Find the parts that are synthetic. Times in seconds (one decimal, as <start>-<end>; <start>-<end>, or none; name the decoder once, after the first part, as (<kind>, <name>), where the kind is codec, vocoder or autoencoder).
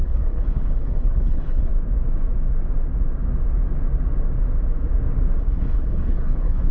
0.0-1.7 (codec, HILCodec); 5.4-6.7